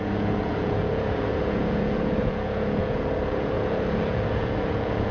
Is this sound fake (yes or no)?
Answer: yes